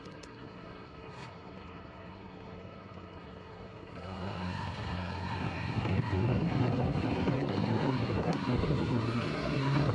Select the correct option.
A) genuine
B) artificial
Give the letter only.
B